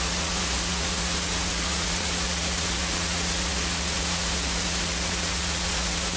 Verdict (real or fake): fake